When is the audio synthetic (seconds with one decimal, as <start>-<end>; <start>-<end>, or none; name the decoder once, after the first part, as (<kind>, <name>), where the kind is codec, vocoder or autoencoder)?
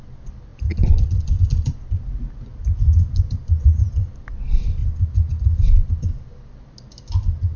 none